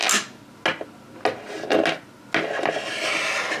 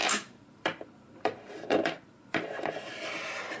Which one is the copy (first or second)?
second